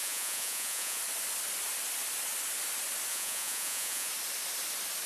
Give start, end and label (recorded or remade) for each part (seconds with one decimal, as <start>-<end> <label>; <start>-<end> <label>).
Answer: 0.0-1.0 remade; 1.0-3.1 recorded; 3.1-4.1 remade; 4.1-5.1 recorded